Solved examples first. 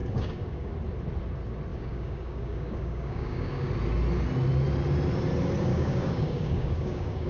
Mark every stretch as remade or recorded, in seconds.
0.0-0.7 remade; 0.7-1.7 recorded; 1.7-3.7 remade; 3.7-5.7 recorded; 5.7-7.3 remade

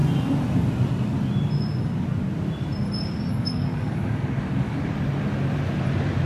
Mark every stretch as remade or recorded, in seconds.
0.0-3.3 recorded; 3.3-4.8 remade; 4.8-6.3 recorded

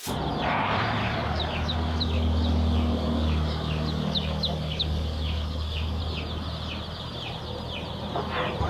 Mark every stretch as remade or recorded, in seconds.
0.0-1.0 recorded; 1.0-6.0 remade; 6.0-8.7 recorded